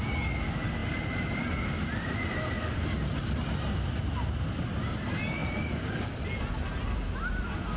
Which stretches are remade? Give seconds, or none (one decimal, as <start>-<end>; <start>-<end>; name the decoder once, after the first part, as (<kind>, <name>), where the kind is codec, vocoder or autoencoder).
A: none

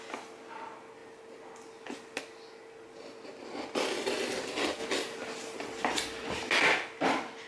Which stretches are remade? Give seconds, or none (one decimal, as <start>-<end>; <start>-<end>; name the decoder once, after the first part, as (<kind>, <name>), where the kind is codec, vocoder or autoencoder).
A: 4.8-6.5 (vocoder, BigVGAN v2)